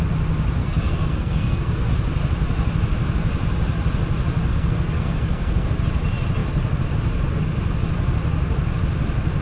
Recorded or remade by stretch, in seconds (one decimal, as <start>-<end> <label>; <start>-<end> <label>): 0.0-0.6 recorded; 0.6-1.9 remade; 1.9-4.5 recorded; 4.5-5.7 remade; 5.7-9.4 recorded